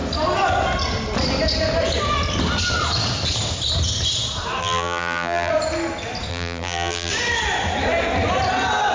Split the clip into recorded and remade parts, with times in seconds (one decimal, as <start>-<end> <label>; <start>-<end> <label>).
0.0-4.6 recorded; 4.6-5.5 remade; 5.5-6.3 recorded; 6.3-7.1 remade; 7.1-8.9 recorded